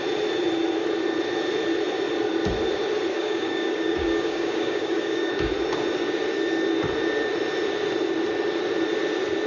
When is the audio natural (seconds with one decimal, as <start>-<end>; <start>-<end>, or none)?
0.0-3.1; 5.3-9.5